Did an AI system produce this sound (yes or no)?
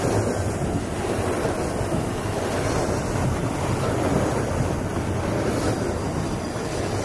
no